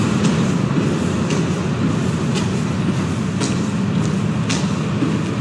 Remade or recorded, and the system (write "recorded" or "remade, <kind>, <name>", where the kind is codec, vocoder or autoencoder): recorded